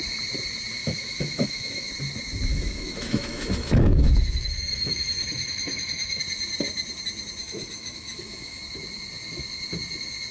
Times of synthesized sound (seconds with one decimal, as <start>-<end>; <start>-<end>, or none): 0.8-1.9; 2.5-6.2; 7.4-8.6